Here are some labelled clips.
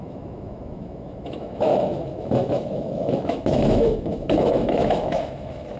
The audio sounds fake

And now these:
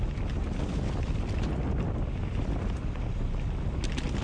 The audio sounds real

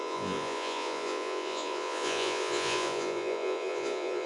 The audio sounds fake